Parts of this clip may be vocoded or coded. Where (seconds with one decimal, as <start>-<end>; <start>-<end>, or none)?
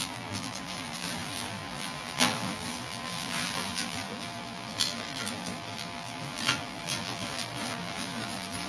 0.0-8.7